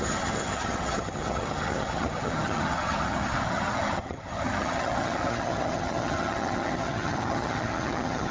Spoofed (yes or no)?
yes